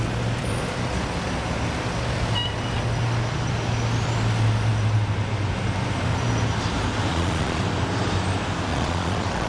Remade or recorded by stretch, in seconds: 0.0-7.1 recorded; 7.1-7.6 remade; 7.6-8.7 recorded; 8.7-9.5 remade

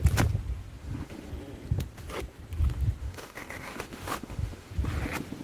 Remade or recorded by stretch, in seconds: 0.0-0.8 recorded; 0.8-1.3 remade; 1.3-3.0 recorded; 3.0-4.7 remade; 4.7-5.4 recorded

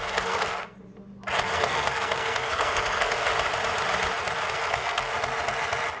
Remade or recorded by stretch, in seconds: 0.0-0.8 remade; 0.8-1.4 recorded; 1.4-3.3 remade; 3.3-4.5 recorded; 4.5-5.1 remade; 5.1-6.0 recorded

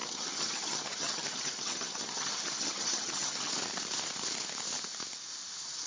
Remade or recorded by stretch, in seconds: 0.0-3.5 remade; 3.5-5.9 recorded

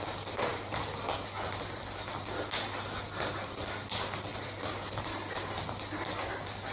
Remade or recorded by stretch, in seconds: 0.0-4.3 recorded; 4.3-5.6 remade; 5.6-6.7 recorded

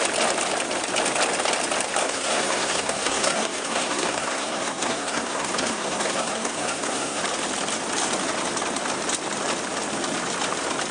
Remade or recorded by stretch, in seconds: 0.0-2.0 recorded; 2.0-7.2 remade; 7.2-10.9 recorded

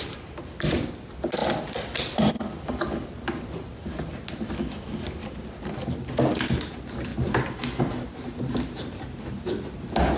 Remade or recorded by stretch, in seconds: 0.0-10.2 recorded